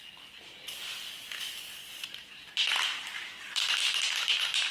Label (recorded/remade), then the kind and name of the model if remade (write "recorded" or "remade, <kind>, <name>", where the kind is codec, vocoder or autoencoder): recorded